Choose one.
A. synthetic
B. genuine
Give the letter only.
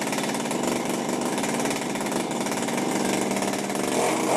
B